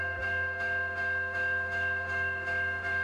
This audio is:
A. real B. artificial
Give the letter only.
B